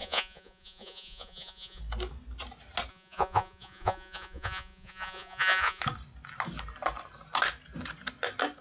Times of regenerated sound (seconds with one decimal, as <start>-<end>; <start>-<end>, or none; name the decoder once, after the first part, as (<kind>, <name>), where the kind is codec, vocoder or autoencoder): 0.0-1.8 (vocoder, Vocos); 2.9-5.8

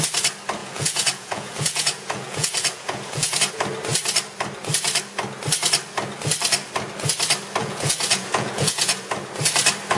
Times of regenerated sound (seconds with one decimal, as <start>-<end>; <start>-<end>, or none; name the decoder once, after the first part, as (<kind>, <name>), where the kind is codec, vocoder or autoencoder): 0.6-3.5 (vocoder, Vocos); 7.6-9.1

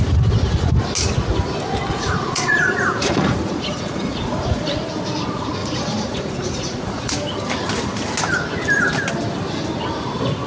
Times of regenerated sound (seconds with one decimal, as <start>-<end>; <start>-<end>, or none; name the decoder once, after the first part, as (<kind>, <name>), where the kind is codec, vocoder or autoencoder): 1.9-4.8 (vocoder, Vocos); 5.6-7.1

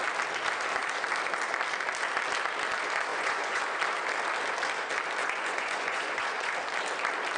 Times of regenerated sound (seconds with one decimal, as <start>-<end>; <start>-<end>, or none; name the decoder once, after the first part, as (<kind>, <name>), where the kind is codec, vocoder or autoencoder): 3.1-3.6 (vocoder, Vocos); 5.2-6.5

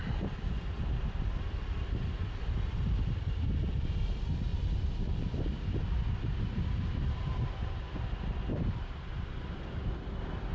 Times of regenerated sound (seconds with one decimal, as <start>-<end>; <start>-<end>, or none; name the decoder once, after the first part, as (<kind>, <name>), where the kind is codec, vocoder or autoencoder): none

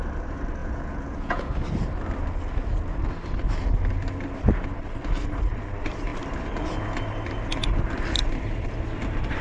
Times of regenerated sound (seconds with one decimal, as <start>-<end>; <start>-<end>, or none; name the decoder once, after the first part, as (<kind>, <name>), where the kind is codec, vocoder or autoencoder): 0.6-1.5 (vocoder, Vocos)

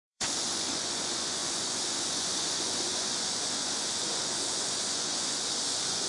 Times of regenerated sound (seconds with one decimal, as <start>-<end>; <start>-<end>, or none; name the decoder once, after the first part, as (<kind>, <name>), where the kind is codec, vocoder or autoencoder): 0.0-6.1 (vocoder, Vocos)

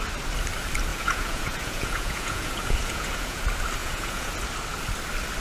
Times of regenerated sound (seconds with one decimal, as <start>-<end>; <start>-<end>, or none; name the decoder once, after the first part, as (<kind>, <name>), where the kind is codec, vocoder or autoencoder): 0.9-3.4 (vocoder, Vocos); 3.8-4.3